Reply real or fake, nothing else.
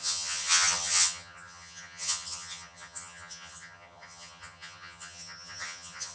fake